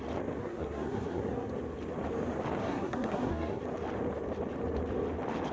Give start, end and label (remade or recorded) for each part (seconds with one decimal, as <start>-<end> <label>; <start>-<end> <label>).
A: 0.0-0.4 recorded; 0.4-1.5 remade; 1.5-2.6 recorded; 2.6-3.6 remade; 3.6-5.5 recorded